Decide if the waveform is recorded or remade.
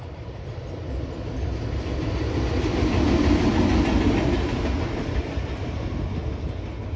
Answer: recorded